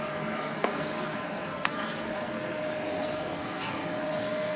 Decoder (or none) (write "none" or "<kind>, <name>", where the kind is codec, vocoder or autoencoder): codec, SNAC